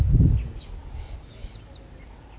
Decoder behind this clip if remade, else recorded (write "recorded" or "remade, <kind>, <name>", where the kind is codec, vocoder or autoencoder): recorded